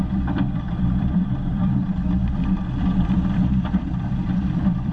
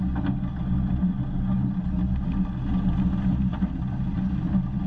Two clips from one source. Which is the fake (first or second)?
first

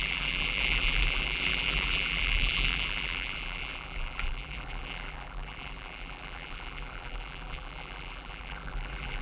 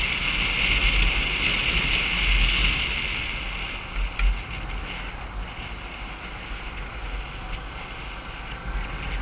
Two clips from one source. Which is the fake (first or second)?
first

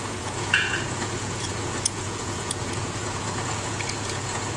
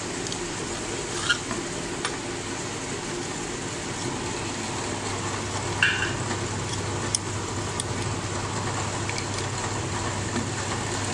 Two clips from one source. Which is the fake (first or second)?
first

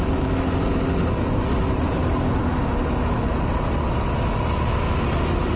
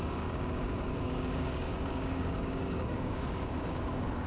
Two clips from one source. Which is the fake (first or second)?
second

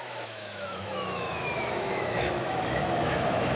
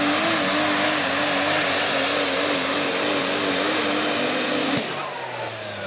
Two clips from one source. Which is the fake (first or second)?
first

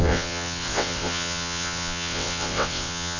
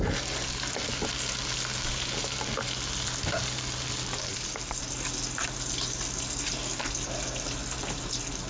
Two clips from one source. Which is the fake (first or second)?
first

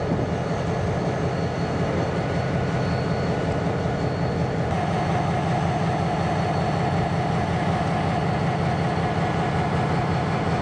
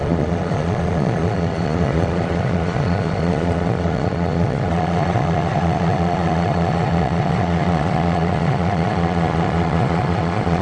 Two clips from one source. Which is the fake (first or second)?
second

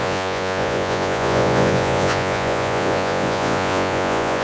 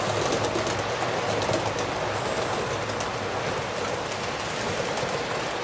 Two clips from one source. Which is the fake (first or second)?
first